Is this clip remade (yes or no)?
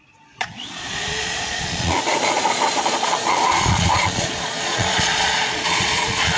yes